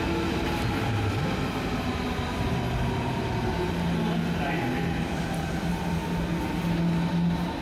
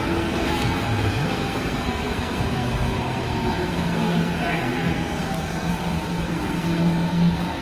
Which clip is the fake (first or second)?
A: second